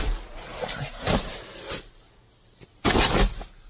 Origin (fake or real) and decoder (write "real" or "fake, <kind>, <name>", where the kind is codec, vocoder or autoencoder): real